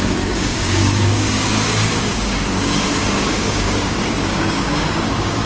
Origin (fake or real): fake